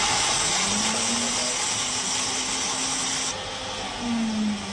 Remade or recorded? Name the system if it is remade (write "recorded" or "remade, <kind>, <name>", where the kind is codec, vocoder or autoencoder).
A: recorded